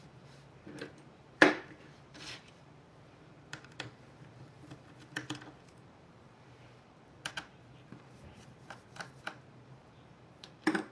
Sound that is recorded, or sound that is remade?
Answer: remade